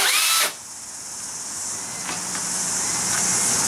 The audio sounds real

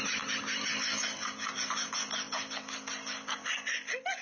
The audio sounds real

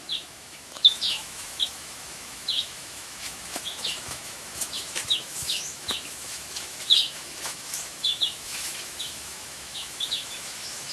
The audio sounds fake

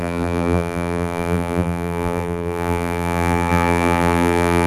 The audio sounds fake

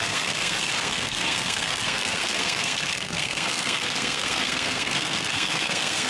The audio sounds fake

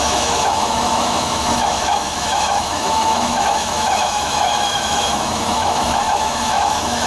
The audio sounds fake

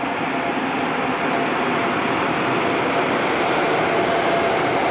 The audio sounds real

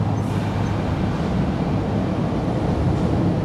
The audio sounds real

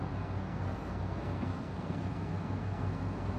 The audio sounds fake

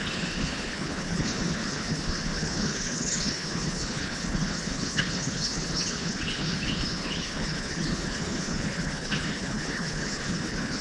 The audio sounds fake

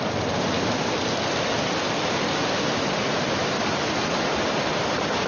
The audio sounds real